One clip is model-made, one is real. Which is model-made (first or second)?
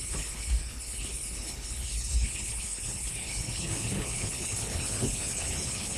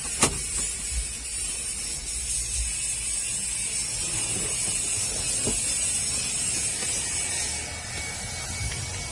first